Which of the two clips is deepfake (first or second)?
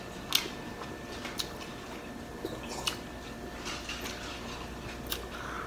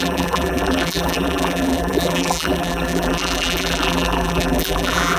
second